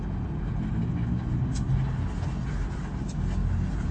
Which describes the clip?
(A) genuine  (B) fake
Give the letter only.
A